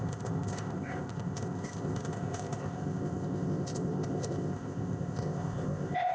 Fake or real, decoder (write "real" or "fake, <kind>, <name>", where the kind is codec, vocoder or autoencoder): fake, codec, ZipCodec